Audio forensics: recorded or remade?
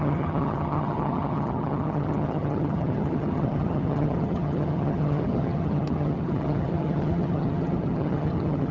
remade